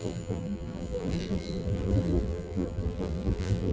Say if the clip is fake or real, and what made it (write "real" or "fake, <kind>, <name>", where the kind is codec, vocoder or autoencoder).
fake, vocoder, BigVGAN v2